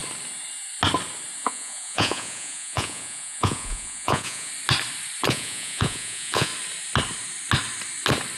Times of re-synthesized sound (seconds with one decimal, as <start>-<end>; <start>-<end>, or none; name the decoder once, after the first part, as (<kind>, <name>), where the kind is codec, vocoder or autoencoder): 1.4-4.5 (vocoder, Vocos); 5.3-6.5